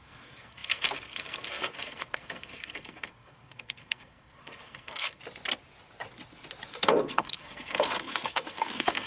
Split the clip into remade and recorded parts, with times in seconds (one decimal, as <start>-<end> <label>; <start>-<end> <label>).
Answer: 0.0-5.2 remade; 5.2-6.7 recorded; 6.7-9.1 remade